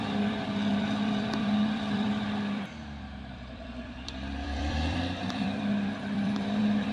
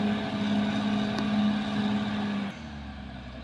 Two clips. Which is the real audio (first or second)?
second